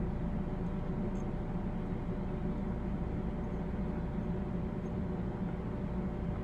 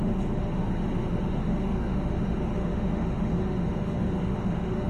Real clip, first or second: first